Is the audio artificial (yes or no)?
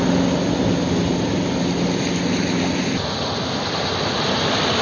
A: no